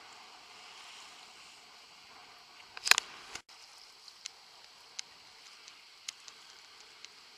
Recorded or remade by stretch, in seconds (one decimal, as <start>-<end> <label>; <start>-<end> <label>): 0.0-7.4 recorded